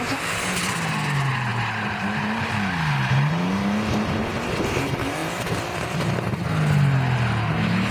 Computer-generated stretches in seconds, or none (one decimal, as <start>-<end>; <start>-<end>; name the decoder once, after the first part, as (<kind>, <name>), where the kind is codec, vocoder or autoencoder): none